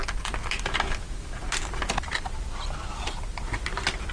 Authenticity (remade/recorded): recorded